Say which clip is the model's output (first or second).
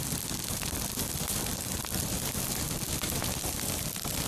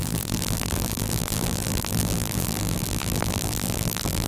second